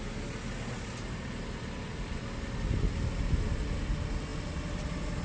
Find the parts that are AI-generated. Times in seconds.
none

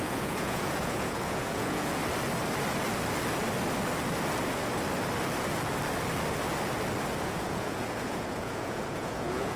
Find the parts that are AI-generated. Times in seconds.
0.0-2.0 (vocoder, Vocos); 7.2-9.6

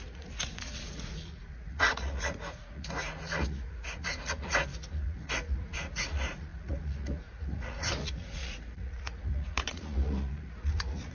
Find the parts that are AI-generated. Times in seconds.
0.0-11.1 (vocoder, Vocos)

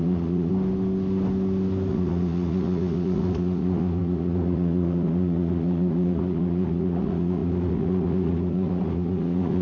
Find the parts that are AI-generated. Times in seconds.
0.0-0.5 (vocoder, Vocos); 1.9-9.6